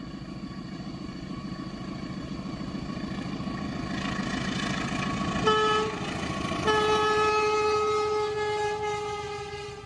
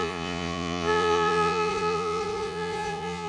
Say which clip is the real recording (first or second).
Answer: first